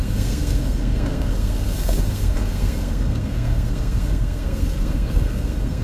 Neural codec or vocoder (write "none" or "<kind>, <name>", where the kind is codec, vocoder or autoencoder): codec, SNAC